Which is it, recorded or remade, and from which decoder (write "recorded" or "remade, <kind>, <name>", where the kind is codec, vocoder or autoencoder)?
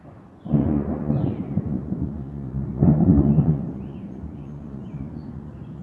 remade, vocoder, Vocos